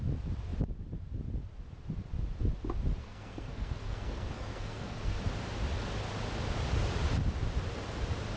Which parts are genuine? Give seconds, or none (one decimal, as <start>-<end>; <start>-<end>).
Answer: 0.0-3.0; 5.2-8.4